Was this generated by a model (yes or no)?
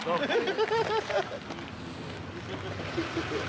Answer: no